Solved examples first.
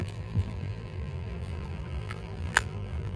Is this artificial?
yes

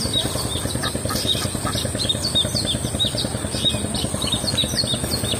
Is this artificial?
no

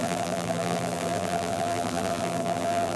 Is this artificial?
yes